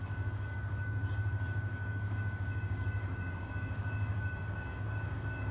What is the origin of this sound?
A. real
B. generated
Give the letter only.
B